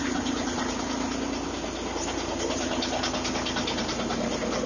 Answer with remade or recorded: recorded